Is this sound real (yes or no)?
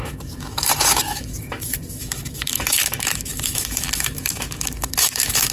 no